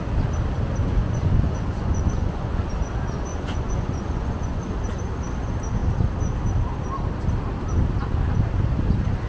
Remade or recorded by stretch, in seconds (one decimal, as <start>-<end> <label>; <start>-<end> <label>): 0.0-0.8 recorded; 0.8-2.6 remade; 2.6-3.3 recorded; 3.3-4.6 remade; 4.6-9.3 recorded